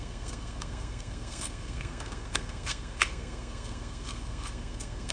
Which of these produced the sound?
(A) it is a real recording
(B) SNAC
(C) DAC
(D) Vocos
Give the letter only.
B